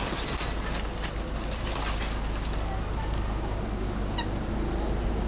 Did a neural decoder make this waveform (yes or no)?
no